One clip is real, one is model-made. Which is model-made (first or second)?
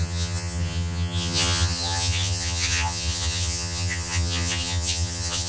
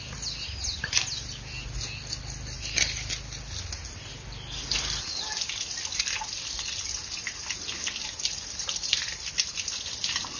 first